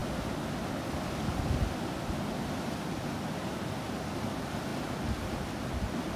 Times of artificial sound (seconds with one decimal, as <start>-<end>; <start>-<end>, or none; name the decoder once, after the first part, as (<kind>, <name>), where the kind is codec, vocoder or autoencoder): none